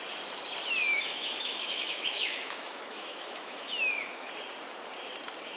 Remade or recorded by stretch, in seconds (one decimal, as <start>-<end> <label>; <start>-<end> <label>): 0.0-0.9 recorded; 0.9-4.3 remade; 4.3-5.6 recorded